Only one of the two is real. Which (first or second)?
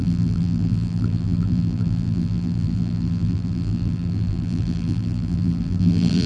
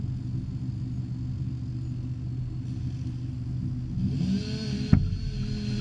second